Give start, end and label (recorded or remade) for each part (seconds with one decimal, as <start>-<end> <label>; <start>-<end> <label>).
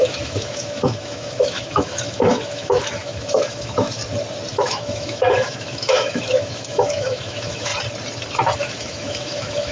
0.0-4.0 remade; 4.0-4.5 recorded; 4.5-7.7 remade; 7.7-8.6 recorded; 8.6-9.7 remade